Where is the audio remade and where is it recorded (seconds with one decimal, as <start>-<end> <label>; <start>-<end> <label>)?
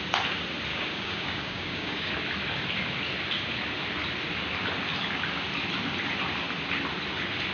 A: 0.0-0.7 recorded; 0.7-2.1 remade; 2.1-7.5 recorded